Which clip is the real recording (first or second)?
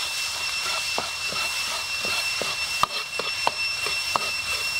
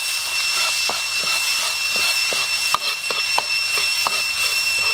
second